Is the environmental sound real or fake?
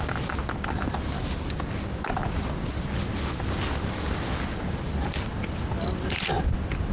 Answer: real